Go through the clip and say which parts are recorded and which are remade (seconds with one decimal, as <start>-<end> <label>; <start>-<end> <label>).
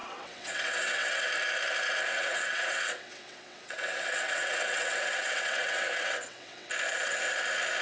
0.0-1.3 remade; 1.3-2.1 recorded; 2.1-6.7 remade; 6.7-7.8 recorded